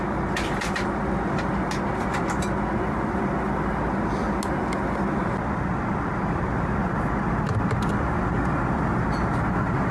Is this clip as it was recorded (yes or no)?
yes